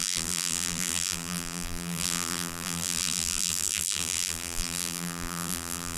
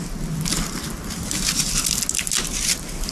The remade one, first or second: first